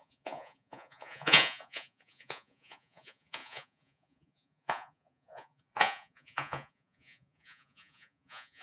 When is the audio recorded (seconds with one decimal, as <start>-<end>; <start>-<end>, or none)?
none